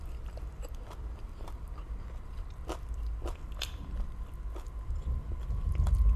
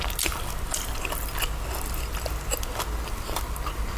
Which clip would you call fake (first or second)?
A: first